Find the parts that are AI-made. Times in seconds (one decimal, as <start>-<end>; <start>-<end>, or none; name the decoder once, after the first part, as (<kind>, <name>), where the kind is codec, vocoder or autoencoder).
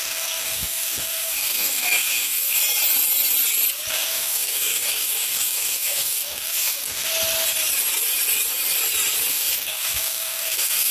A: 0.0-2.6 (codec, DAC); 3.9-7.1; 9.3-10.9